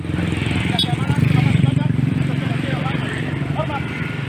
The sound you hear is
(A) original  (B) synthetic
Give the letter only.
B